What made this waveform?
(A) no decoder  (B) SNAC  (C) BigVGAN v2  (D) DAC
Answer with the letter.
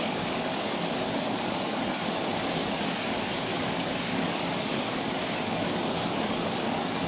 D